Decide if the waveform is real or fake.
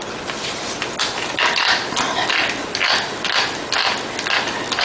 real